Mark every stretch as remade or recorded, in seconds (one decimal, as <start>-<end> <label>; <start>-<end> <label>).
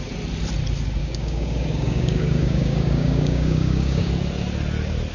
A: 0.0-1.0 recorded; 1.0-4.1 remade; 4.1-5.1 recorded